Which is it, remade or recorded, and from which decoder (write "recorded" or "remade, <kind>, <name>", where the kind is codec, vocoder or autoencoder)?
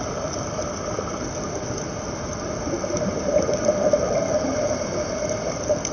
recorded